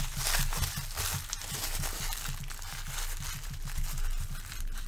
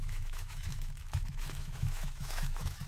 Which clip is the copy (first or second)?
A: second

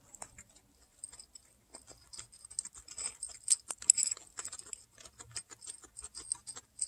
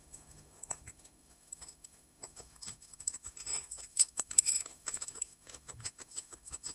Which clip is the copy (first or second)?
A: second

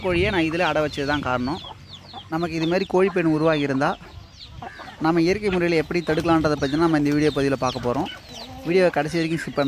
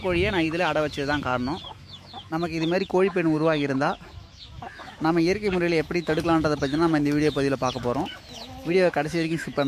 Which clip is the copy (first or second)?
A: second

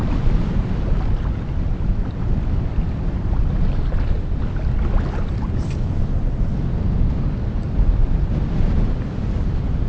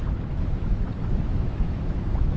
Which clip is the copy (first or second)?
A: second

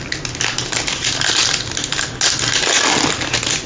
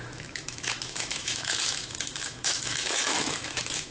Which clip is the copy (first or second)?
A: second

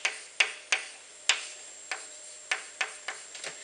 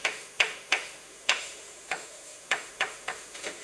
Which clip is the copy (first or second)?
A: second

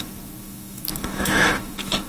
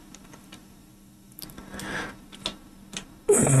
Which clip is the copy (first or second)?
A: first